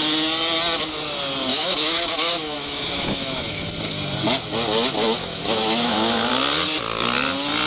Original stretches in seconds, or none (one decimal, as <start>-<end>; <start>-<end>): 0.0-1.5; 3.7-5.2; 6.3-7.7